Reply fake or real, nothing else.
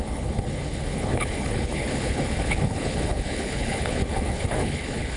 fake